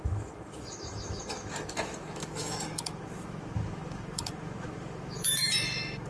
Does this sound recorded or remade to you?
remade